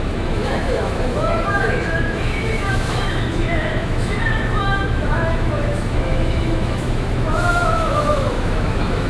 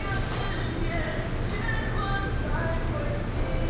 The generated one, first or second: first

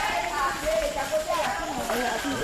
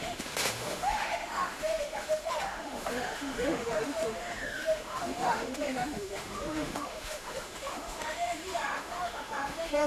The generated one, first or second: second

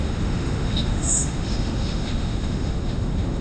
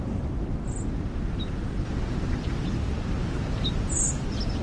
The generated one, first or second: first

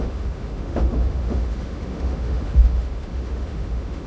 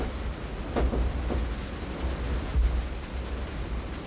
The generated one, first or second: first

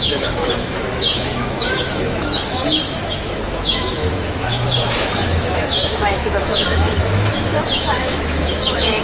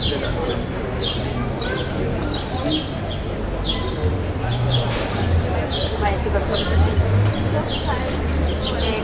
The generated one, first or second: first